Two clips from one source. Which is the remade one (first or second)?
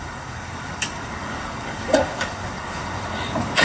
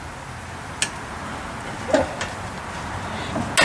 first